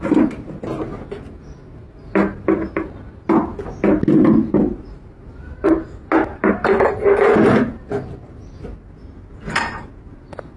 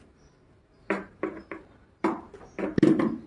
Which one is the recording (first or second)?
first